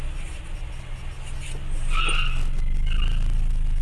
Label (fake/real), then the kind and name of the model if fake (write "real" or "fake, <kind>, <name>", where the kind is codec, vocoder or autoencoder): real